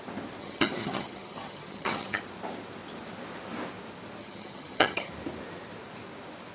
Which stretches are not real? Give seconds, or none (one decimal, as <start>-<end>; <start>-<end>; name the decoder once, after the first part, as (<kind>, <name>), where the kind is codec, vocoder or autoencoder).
0.4-2.2 (vocoder, HiFi-GAN); 4.2-5.1